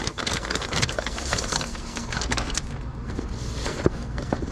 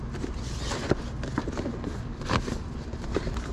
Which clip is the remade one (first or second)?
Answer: first